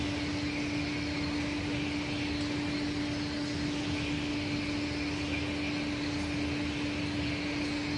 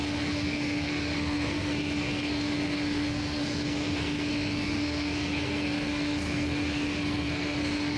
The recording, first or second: first